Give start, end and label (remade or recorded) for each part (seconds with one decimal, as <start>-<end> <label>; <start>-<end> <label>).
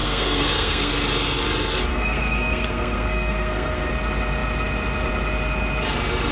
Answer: 0.0-0.9 remade; 0.9-1.9 recorded; 1.9-3.9 remade; 3.9-6.3 recorded